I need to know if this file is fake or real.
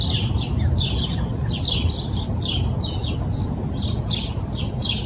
real